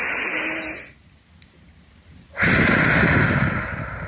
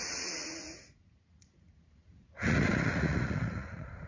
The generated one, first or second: second